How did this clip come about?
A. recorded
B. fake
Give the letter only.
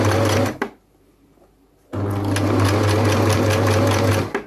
A